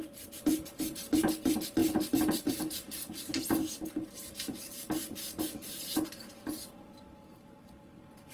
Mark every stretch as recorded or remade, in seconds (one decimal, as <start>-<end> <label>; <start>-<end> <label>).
0.0-8.3 recorded